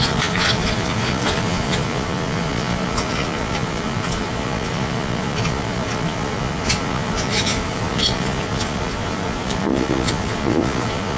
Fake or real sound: fake